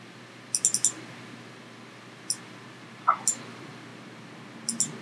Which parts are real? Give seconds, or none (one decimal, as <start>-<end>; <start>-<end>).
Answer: 0.0-5.0